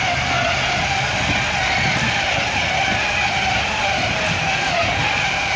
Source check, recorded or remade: recorded